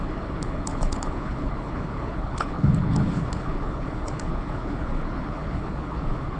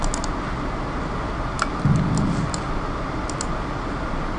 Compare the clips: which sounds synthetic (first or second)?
first